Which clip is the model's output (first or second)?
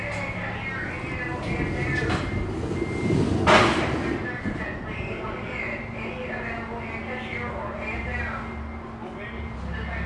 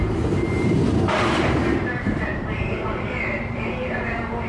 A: second